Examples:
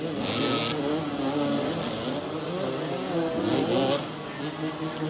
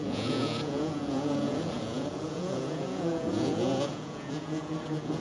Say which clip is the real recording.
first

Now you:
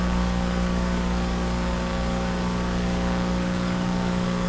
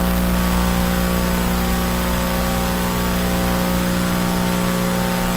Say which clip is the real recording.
second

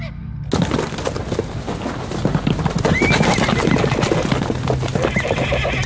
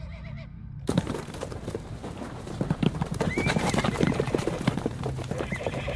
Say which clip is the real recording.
first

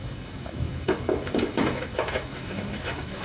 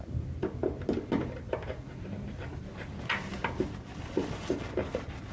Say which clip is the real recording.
second